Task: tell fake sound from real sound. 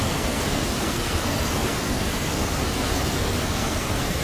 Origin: fake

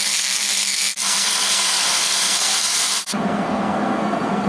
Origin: fake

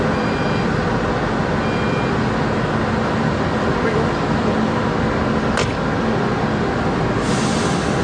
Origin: real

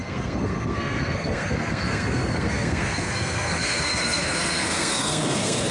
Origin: fake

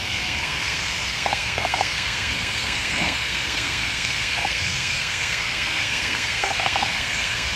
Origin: fake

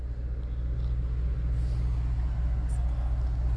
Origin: real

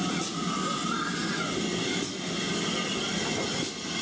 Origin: real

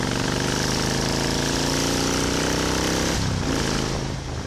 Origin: real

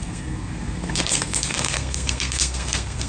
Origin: fake